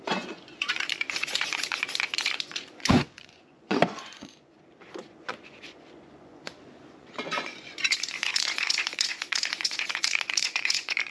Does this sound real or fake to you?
fake